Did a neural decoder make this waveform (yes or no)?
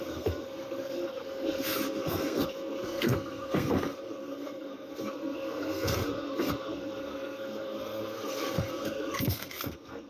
yes